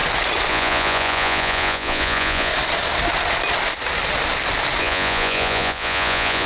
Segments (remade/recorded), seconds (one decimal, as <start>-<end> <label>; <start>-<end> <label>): 0.0-0.5 recorded; 0.5-2.5 remade; 2.5-4.8 recorded; 4.8-6.5 remade

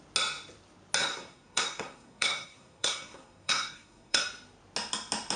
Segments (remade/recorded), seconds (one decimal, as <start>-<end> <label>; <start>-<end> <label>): 0.0-1.0 recorded; 1.0-4.2 remade; 4.2-5.4 recorded

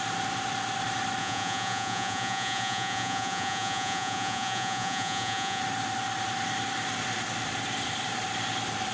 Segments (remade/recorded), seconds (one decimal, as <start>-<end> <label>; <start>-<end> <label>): 0.0-1.2 recorded; 1.2-5.6 remade; 5.6-8.9 recorded

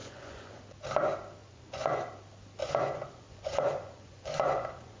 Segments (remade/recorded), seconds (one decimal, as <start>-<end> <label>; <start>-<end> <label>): 0.0-0.6 remade; 0.6-1.4 recorded; 1.4-2.1 remade; 2.1-2.6 recorded; 2.6-5.0 remade

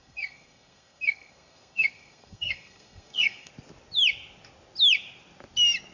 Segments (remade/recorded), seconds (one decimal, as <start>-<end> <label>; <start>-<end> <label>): 0.0-3.5 remade; 3.5-5.9 recorded

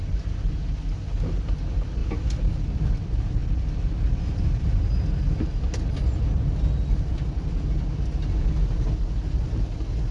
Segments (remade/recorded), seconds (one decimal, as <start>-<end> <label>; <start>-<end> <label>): 0.0-2.0 recorded; 2.0-2.9 remade; 2.9-3.4 recorded; 3.4-4.8 remade; 4.8-10.1 recorded

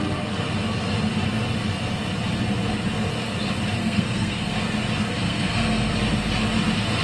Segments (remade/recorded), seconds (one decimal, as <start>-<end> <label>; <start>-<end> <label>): 0.0-3.8 recorded; 3.8-4.6 remade; 4.6-5.1 recorded; 5.1-5.9 remade; 5.9-7.0 recorded

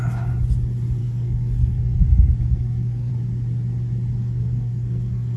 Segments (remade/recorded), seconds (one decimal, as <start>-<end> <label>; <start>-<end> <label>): 0.0-1.0 recorded; 1.0-3.1 remade; 3.1-4.2 recorded; 4.2-5.4 remade